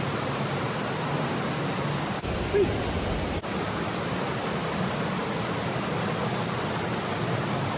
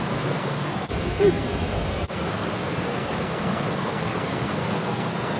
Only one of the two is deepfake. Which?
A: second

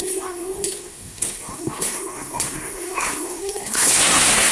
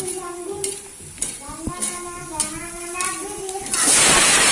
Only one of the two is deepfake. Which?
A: first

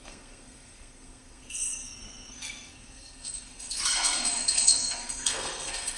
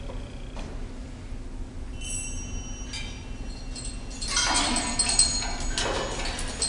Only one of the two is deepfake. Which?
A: first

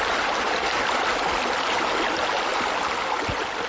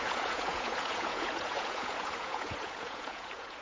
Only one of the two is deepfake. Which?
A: second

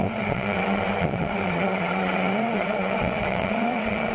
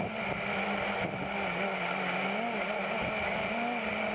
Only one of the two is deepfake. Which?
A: first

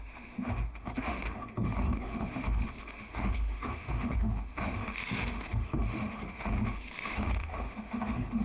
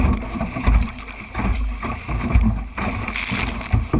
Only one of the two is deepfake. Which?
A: first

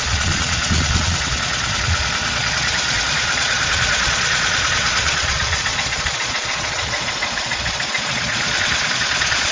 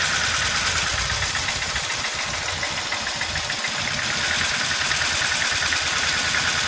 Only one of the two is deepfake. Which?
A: first